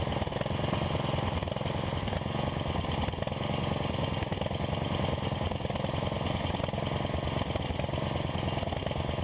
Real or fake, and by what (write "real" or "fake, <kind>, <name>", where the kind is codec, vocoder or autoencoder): real